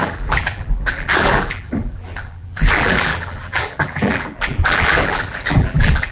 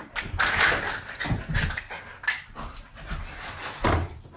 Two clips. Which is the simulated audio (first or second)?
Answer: first